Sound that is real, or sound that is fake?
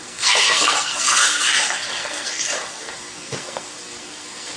fake